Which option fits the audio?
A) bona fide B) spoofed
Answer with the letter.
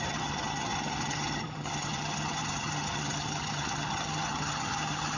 B